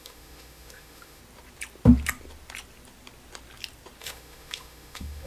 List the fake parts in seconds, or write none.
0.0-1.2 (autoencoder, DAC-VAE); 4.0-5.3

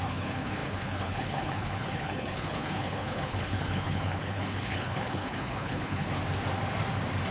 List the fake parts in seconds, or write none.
0.0-6.2 (codec, HILCodec)

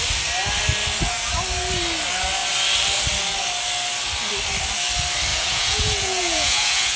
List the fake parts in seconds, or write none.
5.3-7.0 (vocoder, Vocos)